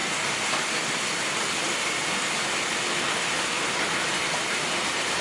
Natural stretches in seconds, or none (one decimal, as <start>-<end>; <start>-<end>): 0.0-5.2